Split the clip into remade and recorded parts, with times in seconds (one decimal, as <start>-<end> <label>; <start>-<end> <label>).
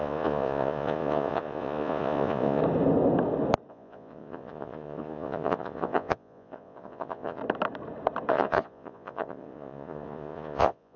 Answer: 0.0-2.6 remade; 2.6-3.7 recorded; 3.7-7.4 remade; 7.4-8.3 recorded; 8.3-11.0 remade